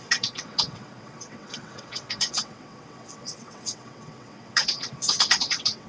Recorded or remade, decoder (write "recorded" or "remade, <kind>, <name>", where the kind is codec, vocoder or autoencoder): remade, vocoder, WaveNeXt